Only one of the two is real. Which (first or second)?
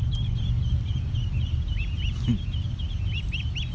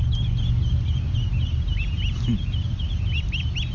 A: second